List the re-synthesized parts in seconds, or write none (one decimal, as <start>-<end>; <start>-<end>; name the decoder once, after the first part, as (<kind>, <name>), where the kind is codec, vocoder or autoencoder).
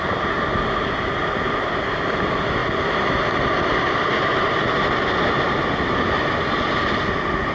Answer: none